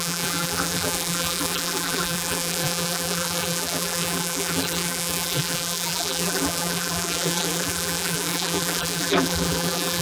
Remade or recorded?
remade